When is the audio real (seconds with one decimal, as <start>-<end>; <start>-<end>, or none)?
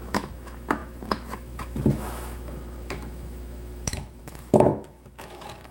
none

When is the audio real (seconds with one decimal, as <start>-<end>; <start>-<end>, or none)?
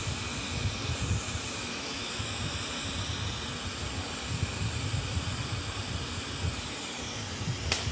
0.0-1.6; 2.5-7.9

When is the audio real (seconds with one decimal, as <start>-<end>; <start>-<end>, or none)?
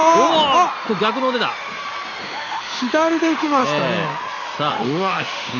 0.0-2.2; 3.6-4.7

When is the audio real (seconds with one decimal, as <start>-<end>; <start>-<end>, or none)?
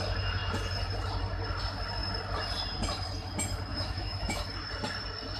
0.0-3.7; 4.4-5.4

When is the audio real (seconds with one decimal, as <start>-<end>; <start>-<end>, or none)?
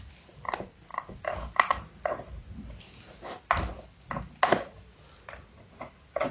0.0-6.3